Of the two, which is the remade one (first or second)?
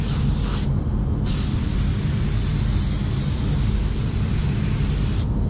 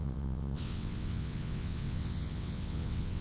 second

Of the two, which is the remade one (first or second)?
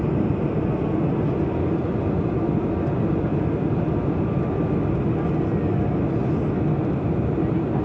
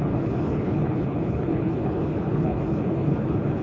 second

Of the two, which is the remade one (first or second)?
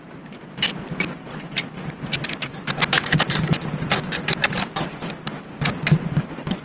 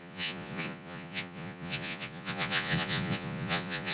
second